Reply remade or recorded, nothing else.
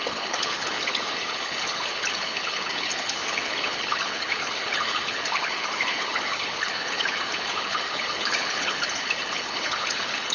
remade